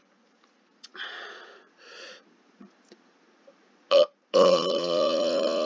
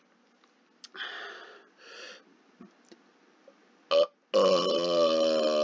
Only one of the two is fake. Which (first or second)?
first